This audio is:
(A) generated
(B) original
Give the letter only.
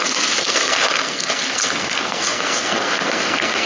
A